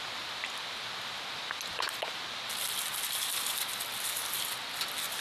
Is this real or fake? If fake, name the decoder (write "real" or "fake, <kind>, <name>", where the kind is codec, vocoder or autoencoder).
real